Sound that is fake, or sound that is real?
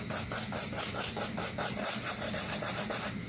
real